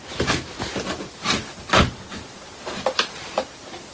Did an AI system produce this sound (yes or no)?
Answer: no